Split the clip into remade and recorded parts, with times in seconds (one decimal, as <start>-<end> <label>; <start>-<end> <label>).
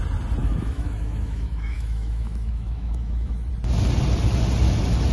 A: 0.0-0.4 recorded; 0.4-3.5 remade; 3.5-5.1 recorded